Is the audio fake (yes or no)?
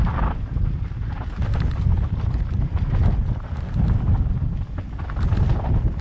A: no